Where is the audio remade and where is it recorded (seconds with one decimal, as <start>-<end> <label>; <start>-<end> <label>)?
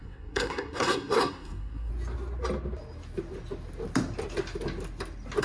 0.0-1.9 remade; 1.9-5.4 recorded